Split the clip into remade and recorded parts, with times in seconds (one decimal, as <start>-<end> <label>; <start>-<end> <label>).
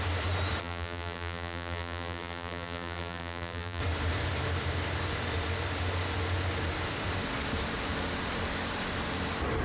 0.0-0.6 recorded; 0.6-3.8 remade; 3.8-9.6 recorded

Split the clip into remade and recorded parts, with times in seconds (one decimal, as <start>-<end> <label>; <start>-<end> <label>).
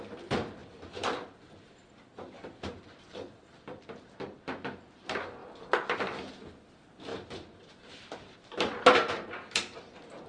0.0-3.1 recorded; 3.1-3.9 remade; 3.9-10.3 recorded